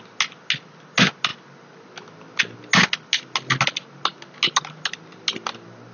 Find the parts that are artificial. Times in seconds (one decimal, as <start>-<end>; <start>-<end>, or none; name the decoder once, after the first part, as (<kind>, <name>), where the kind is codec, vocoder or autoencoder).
none